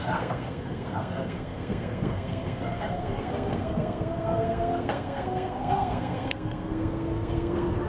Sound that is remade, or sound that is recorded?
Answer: remade